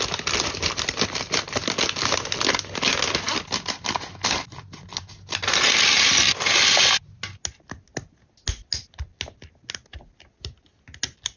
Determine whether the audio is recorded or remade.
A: recorded